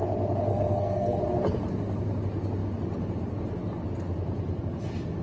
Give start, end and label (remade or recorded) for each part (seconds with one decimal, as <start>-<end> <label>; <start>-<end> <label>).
0.0-0.5 recorded; 0.5-1.2 remade; 1.2-5.2 recorded